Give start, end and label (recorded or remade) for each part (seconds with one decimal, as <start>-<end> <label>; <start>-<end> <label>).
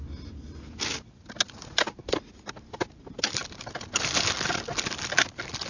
0.0-5.7 recorded